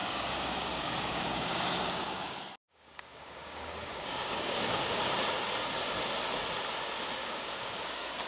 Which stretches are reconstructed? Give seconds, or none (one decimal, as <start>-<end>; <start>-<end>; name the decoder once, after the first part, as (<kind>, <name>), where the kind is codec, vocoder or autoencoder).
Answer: 0.0-5.0 (codec, DAC); 7.2-8.3